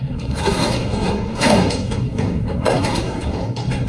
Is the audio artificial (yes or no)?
yes